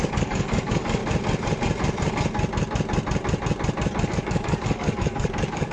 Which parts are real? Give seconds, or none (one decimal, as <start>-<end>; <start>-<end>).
1.0-4.1